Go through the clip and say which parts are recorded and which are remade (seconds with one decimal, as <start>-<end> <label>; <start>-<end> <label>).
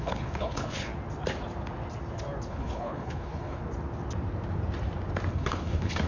0.0-0.9 remade; 0.9-2.5 recorded; 2.5-3.6 remade; 3.6-5.3 recorded; 5.3-6.1 remade